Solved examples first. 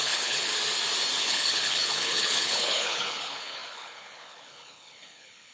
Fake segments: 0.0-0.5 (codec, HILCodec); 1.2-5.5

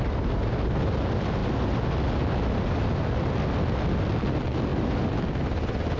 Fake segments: none

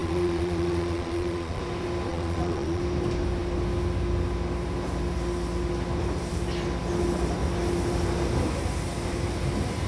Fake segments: 0.0-1.6 (vocoder, Vocos); 2.1-2.8

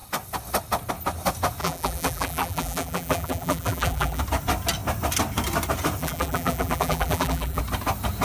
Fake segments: 1.6-4.2 (vocoder, BigVGAN v2); 6.0-7.6

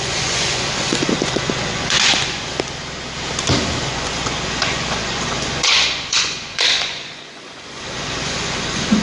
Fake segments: 0.0-2.5 (vocoder, Vocos); 3.8-9.0

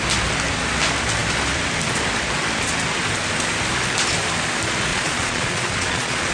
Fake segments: 4.9-6.3 (vocoder, Vocos)

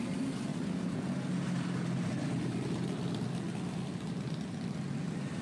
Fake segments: none